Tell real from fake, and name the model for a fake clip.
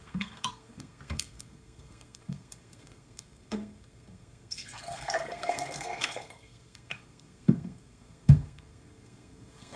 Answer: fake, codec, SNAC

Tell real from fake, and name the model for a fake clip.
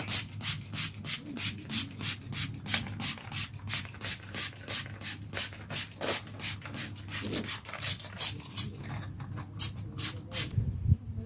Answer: real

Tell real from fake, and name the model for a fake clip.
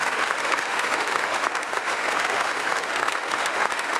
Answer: fake, autoencoder, DAC-VAE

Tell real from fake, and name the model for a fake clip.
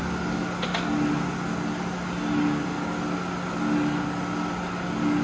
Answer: real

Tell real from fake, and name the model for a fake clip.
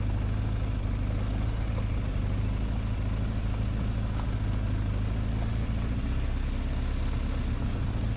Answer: real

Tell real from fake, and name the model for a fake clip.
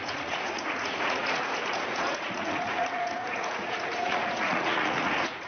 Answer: fake, vocoder, Vocos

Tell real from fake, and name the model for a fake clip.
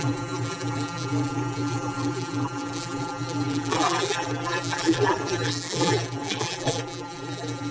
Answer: fake, vocoder, BigVGAN v2